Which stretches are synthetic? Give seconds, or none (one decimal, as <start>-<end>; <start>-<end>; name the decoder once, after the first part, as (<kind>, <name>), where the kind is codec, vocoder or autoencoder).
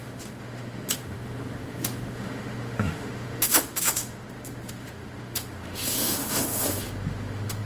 0.0-7.7 (autoencoder, DAC-VAE)